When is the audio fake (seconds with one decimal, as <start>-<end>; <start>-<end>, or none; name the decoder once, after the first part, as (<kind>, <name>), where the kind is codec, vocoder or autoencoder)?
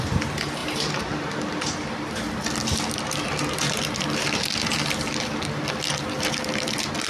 none